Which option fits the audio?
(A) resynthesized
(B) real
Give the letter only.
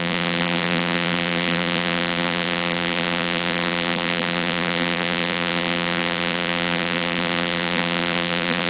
A